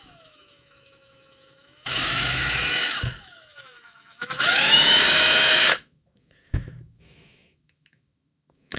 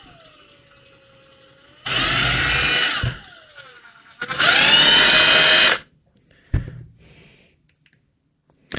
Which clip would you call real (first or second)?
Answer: second